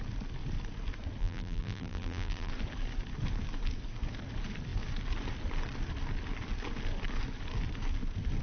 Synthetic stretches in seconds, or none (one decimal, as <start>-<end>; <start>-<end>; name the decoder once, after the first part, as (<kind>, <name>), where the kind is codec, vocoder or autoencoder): 1.2-2.5 (vocoder, BigVGAN v2)